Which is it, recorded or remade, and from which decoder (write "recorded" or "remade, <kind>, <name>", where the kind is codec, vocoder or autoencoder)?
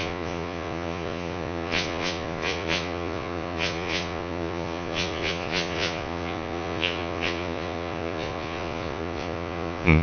remade, vocoder, Vocos